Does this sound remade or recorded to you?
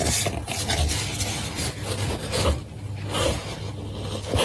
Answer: recorded